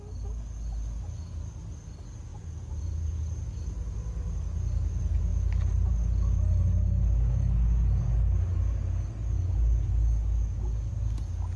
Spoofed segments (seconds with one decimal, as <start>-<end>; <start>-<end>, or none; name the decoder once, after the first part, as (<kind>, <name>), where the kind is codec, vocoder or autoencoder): 2.3-3.2 (vocoder, BigVGAN v2)